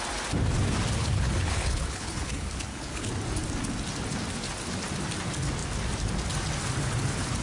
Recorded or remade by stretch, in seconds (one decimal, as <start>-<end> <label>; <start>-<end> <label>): 0.0-1.0 recorded; 1.0-3.1 remade; 3.1-7.4 recorded